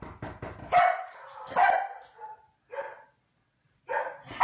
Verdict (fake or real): real